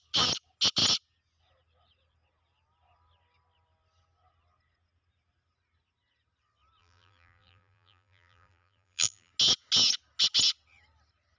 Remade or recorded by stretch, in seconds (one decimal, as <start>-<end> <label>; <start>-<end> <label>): 0.0-6.8 recorded; 6.8-9.3 remade; 9.3-11.4 recorded